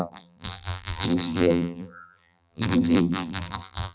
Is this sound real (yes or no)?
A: no